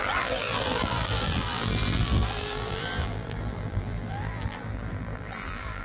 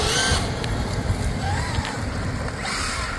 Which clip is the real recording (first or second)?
second